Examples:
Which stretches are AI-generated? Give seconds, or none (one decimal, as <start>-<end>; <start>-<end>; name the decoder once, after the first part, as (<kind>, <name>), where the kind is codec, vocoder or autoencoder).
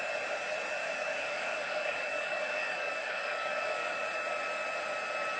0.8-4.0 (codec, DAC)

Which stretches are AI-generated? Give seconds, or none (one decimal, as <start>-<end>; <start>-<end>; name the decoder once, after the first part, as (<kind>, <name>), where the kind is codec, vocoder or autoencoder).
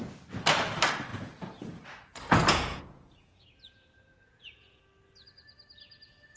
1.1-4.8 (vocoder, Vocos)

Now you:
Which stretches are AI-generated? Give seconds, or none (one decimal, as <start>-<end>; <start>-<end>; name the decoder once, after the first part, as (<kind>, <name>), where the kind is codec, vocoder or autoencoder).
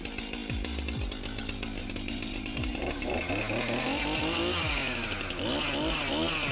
1.8-3.3 (vocoder, BigVGAN v2)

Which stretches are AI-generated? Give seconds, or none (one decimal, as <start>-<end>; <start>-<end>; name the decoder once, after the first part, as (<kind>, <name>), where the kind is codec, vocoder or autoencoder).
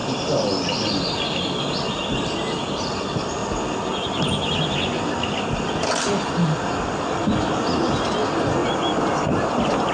none